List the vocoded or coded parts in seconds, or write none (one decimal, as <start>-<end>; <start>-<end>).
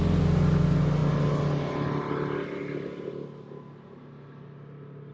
none